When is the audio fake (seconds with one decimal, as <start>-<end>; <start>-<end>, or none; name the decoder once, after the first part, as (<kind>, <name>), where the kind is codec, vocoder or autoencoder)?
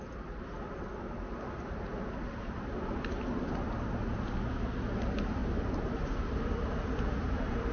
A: 5.4-6.2 (vocoder, BigVGAN v2)